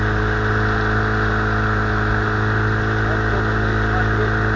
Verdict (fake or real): real